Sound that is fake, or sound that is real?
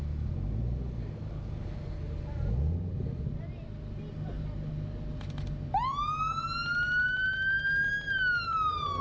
real